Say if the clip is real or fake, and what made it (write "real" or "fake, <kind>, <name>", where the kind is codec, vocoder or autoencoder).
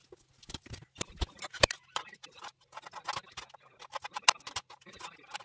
real